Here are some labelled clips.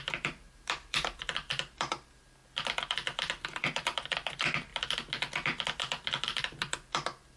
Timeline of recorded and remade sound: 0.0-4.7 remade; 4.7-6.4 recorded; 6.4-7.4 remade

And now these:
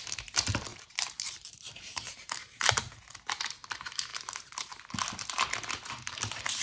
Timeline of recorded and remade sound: 0.0-0.7 recorded; 0.7-3.1 remade; 3.1-4.1 recorded; 4.1-4.8 remade; 4.8-6.6 recorded

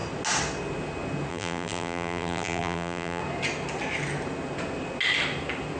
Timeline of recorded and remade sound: 0.0-1.3 recorded; 1.3-3.2 remade; 3.2-5.8 recorded

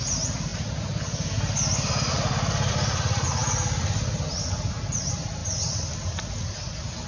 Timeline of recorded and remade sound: 0.0-0.5 remade; 0.5-2.7 recorded; 2.7-3.4 remade; 3.4-4.9 recorded; 4.9-5.4 remade; 5.4-6.2 recorded; 6.2-7.1 remade

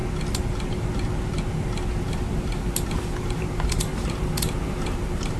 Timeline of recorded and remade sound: 0.0-2.0 recorded; 2.0-5.4 remade

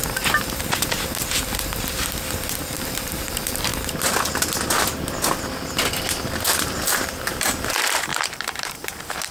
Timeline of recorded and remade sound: 0.0-3.7 remade; 3.7-6.6 recorded; 6.6-9.3 remade

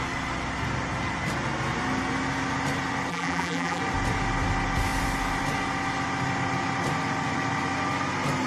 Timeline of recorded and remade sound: 0.0-3.1 recorded; 3.1-3.8 remade; 3.8-8.5 recorded